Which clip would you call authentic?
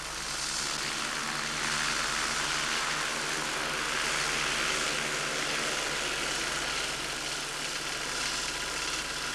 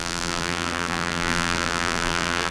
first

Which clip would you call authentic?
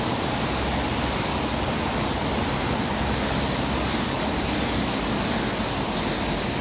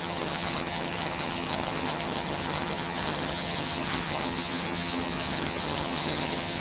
first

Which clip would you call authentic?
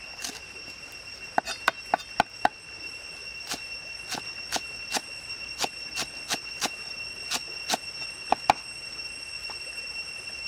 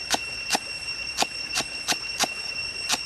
first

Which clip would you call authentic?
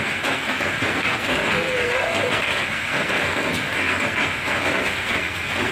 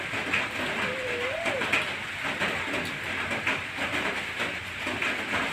second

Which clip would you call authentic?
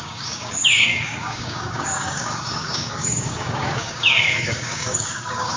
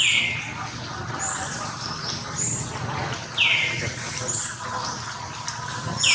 second